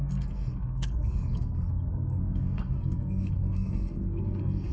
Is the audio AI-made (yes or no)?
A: yes